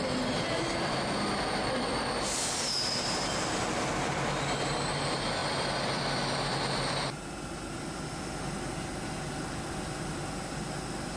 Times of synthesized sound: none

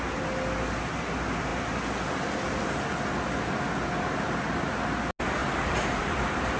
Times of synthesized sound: none

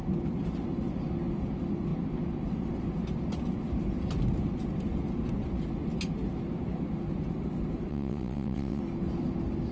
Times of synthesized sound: 7.9-8.8 (vocoder, WaveNeXt)